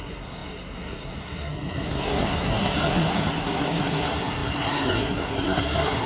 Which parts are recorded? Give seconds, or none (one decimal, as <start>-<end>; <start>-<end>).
none